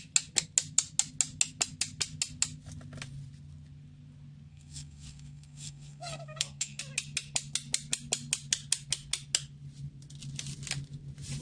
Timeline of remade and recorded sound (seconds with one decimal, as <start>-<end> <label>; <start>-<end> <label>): 0.0-4.5 recorded; 4.5-6.8 remade; 6.8-11.4 recorded